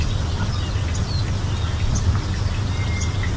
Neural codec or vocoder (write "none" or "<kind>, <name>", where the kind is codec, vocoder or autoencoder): none